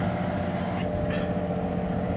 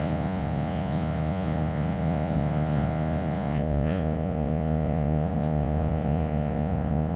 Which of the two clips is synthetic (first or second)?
second